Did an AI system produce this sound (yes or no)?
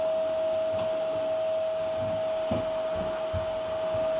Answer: no